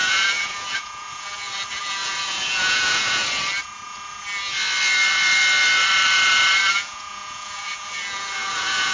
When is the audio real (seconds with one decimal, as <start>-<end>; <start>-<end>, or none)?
3.2-6.7